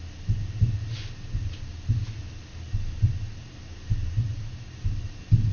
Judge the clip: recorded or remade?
recorded